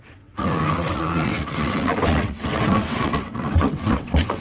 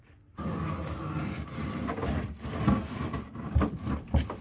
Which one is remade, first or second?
first